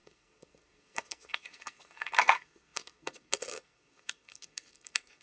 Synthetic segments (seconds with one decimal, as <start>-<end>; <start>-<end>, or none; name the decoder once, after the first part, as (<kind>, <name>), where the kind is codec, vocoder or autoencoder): 0.0-5.2 (codec, SNAC)